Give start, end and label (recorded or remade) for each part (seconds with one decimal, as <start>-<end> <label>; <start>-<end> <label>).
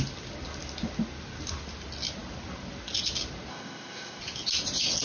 0.0-3.5 recorded; 3.5-4.2 remade; 4.2-5.0 recorded